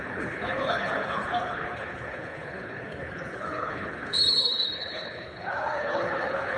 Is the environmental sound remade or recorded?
remade